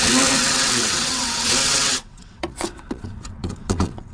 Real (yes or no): no